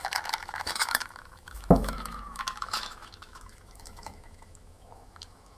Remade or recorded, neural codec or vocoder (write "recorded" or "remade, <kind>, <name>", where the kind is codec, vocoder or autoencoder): remade, autoencoder, DAC-VAE